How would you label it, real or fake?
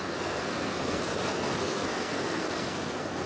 fake